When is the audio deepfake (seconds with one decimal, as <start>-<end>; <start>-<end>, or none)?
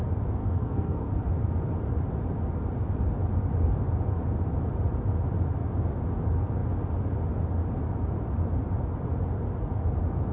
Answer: 0.4-1.1